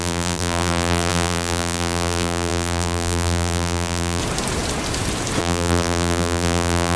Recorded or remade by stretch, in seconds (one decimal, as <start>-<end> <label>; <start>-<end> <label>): 0.0-4.2 remade; 4.2-5.4 recorded; 5.4-7.0 remade